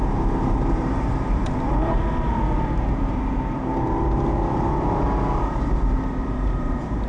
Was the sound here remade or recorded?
remade